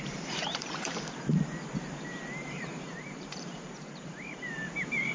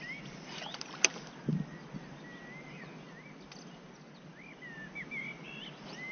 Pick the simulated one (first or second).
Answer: first